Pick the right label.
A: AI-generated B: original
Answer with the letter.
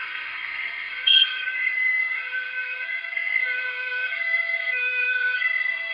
A